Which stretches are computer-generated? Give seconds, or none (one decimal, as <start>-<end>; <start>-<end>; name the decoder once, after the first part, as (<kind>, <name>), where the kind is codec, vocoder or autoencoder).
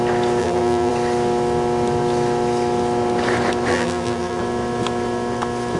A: 0.4-0.9 (vocoder, BigVGAN v2); 3.7-4.4